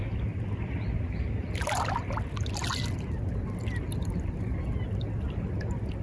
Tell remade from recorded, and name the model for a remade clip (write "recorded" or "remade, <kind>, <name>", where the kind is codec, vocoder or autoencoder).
recorded